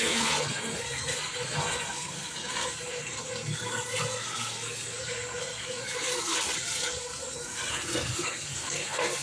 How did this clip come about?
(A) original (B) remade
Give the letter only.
B